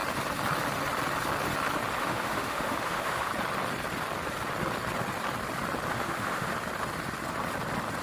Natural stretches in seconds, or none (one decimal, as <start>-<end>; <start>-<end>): 0.0-2.0; 3.3-5.9; 6.5-8.0